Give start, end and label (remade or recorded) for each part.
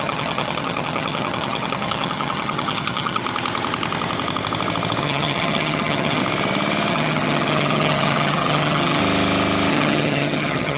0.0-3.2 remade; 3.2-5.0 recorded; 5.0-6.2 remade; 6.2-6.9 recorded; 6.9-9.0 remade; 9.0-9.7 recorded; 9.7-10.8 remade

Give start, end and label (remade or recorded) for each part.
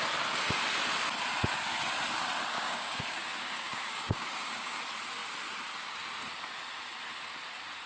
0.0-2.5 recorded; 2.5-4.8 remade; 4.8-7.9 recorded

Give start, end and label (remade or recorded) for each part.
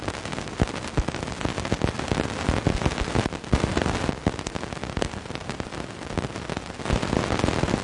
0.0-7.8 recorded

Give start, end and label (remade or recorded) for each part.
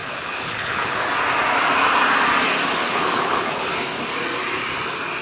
0.0-1.1 remade; 1.1-2.8 recorded; 2.8-3.7 remade; 3.7-5.2 recorded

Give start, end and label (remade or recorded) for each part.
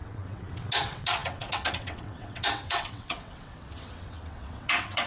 0.0-5.1 remade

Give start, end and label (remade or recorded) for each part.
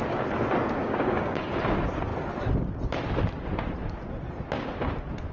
0.0-0.8 recorded; 0.8-1.6 remade; 1.6-5.3 recorded